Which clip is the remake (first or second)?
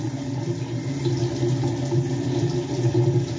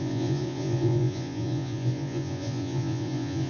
second